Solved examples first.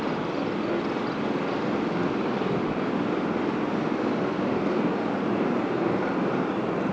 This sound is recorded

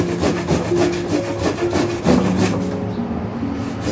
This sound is remade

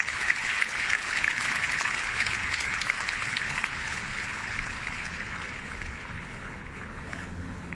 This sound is remade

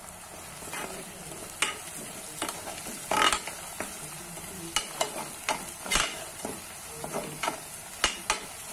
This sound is recorded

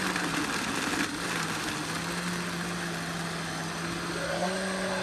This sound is recorded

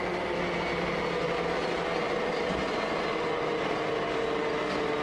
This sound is recorded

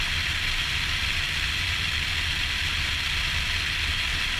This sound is recorded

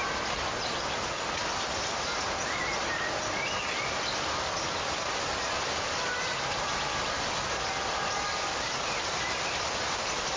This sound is recorded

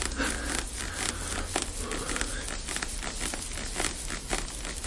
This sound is recorded